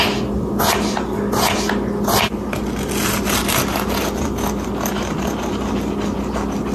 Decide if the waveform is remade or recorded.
recorded